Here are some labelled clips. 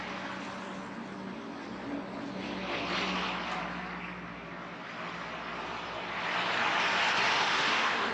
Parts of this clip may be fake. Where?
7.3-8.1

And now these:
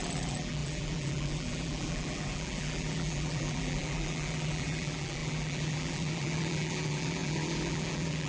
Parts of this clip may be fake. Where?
0.0-8.3

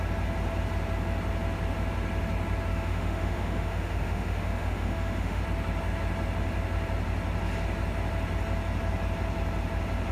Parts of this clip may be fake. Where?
2.7-5.4

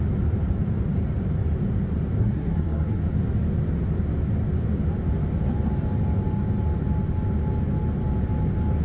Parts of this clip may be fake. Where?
2.2-3.0

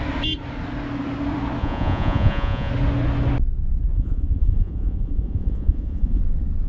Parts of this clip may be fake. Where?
1.6-2.7; 3.9-6.2